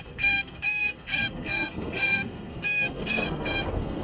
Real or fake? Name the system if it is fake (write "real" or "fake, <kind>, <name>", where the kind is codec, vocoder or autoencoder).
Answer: fake, codec, SNAC